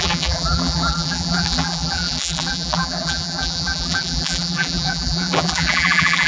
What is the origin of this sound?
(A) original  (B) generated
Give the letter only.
B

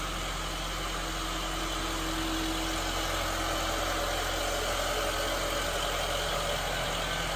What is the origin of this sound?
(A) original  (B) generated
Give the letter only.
A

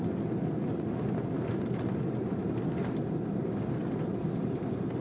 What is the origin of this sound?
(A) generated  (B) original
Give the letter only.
B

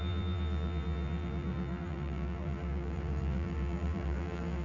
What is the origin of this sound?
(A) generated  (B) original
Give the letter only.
A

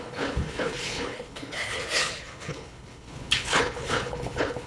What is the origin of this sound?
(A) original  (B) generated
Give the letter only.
B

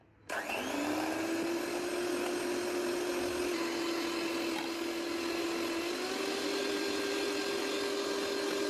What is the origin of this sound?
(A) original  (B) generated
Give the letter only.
A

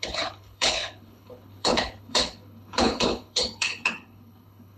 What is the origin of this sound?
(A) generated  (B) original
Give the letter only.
A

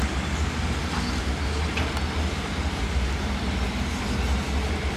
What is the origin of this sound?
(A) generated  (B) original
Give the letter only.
B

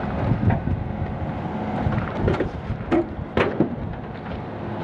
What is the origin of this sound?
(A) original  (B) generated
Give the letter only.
A